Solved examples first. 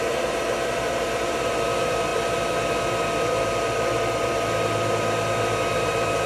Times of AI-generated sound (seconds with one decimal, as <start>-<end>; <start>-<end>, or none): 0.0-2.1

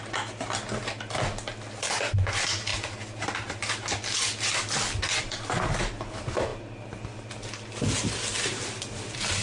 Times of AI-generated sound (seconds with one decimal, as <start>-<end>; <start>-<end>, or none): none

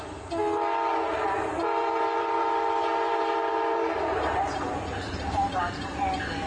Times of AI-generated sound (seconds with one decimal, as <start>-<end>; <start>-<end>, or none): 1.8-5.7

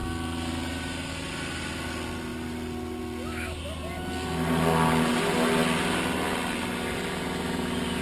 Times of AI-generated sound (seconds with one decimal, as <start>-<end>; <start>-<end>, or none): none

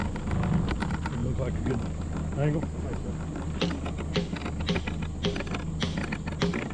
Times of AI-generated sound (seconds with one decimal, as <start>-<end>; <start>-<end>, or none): 1.2-1.7

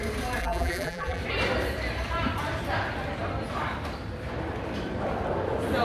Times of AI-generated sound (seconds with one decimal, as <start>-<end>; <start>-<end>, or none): 0.4-1.2